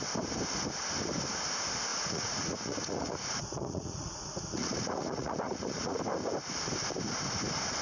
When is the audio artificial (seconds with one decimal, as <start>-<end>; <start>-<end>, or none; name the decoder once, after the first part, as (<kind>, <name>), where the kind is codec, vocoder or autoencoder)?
1.9-6.0 (vocoder, Vocos)